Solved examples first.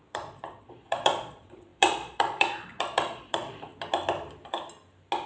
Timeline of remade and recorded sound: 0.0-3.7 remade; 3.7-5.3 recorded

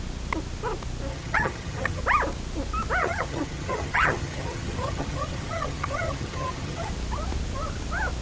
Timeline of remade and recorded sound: 0.0-1.1 recorded; 1.1-2.0 remade; 2.0-3.0 recorded; 3.0-6.9 remade; 6.9-8.2 recorded

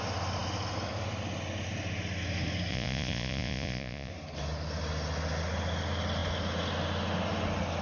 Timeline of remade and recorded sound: 0.0-2.7 recorded; 2.7-4.1 remade; 4.1-7.8 recorded

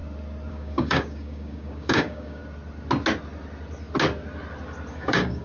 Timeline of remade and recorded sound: 0.0-0.5 recorded; 0.5-2.4 remade; 2.4-4.9 recorded; 4.9-5.4 remade